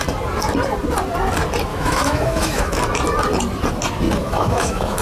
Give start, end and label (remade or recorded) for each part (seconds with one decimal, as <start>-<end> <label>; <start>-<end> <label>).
0.0-1.7 recorded; 1.7-2.8 remade; 2.8-4.2 recorded; 4.2-5.0 remade